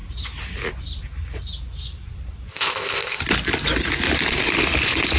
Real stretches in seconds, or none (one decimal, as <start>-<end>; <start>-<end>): 0.0-2.5; 3.2-5.2